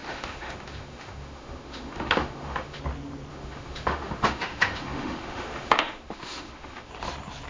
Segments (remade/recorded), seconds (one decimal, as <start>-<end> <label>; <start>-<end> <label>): 0.0-2.8 remade; 2.8-3.3 recorded; 3.3-6.9 remade; 6.9-7.5 recorded